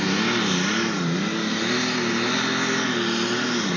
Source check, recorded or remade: recorded